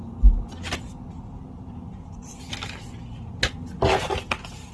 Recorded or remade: recorded